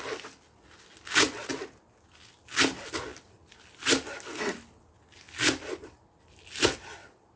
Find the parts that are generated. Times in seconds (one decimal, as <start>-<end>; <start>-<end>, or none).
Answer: none